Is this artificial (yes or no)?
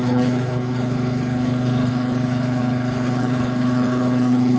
yes